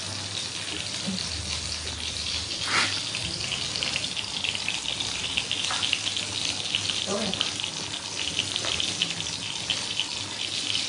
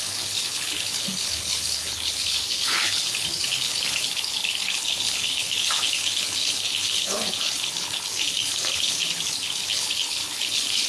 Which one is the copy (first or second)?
second